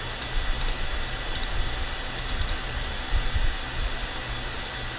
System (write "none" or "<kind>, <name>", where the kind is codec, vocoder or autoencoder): none